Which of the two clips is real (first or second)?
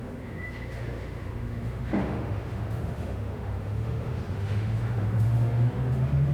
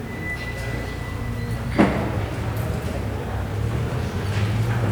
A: second